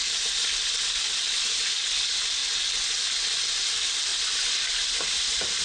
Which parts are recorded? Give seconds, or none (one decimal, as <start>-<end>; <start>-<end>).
0.0-5.6